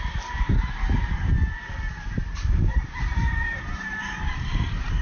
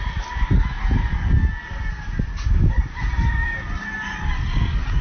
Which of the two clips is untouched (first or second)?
second